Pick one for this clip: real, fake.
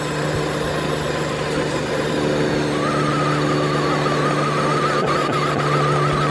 real